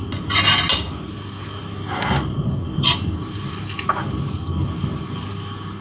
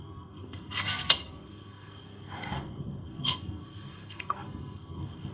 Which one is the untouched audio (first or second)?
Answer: first